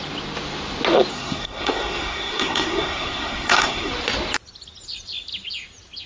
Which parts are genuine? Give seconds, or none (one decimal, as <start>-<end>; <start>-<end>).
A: 0.0-1.1; 3.9-6.1

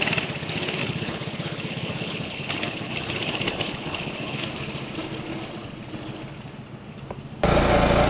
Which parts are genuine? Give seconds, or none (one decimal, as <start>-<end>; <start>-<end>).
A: 0.0-0.8; 4.4-8.1